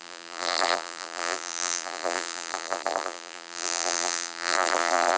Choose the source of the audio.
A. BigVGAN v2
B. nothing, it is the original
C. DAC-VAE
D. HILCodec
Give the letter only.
A